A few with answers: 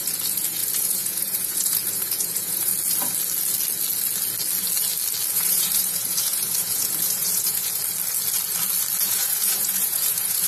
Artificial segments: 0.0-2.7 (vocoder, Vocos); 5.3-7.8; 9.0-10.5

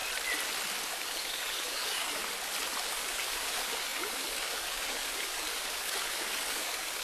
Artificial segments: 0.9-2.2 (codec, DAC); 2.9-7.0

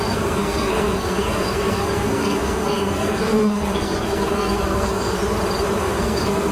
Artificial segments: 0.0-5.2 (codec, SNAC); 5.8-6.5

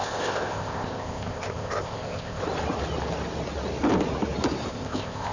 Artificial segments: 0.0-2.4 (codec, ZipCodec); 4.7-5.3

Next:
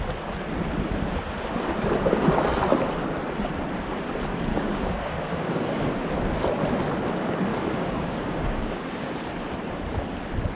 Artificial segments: 4.5-5.8 (codec, DAC); 7.5-9.1